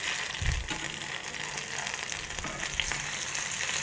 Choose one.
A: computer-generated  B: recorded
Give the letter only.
B